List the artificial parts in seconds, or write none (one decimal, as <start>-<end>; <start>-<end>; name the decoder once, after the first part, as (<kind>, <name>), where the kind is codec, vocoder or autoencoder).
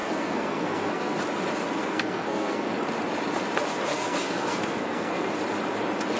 0.0-1.2 (codec, SNAC); 1.8-2.7; 3.9-5.3